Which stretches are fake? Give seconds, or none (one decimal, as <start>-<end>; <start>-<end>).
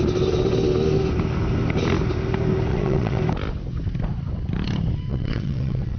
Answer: 2.7-3.2; 5.1-6.0